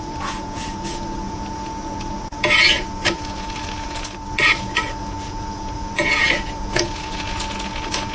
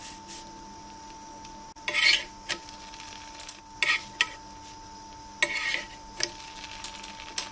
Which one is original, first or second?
second